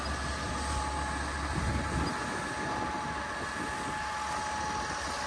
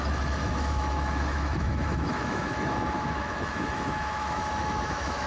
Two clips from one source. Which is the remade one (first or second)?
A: second